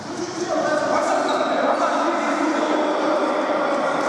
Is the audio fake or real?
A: real